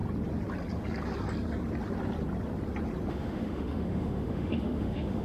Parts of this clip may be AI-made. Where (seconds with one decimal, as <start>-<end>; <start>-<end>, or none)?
3.1-5.2